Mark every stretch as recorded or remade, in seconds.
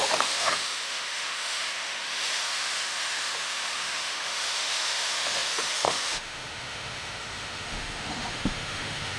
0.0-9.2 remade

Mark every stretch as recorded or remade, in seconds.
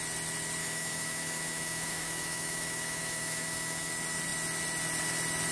0.0-0.6 recorded; 0.6-3.9 remade; 3.9-5.5 recorded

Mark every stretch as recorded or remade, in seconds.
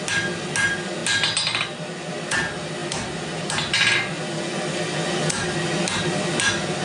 0.0-6.8 recorded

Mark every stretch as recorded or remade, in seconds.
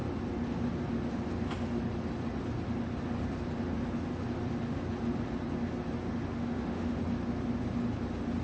0.0-6.3 recorded; 6.3-7.0 remade; 7.0-8.4 recorded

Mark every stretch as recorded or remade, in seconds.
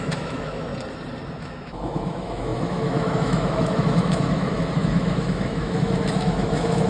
0.0-0.7 remade; 0.7-1.4 recorded; 1.4-6.9 remade